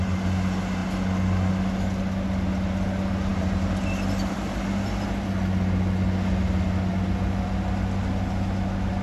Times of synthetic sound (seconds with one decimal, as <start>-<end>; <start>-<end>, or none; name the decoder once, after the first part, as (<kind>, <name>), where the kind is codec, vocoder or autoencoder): none